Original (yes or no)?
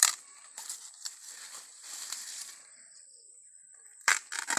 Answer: no